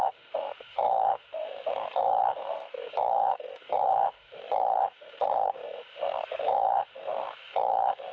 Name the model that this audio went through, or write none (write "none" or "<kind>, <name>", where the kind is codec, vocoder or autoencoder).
autoencoder, DAC-VAE